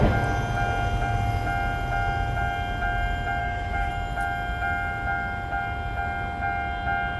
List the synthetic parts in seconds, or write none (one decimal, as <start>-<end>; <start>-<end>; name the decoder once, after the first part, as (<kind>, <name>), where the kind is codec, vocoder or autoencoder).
3.4-3.9 (autoencoder, DAC-VAE)

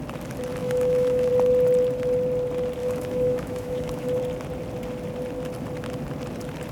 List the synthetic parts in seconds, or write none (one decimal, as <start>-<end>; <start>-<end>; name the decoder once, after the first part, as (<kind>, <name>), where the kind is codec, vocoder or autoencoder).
0.6-1.3 (autoencoder, DAC-VAE); 2.8-4.2